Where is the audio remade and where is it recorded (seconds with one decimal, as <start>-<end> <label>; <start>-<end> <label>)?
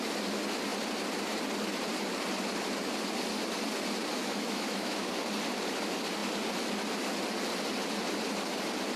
0.0-4.2 recorded; 4.2-5.1 remade; 5.1-9.0 recorded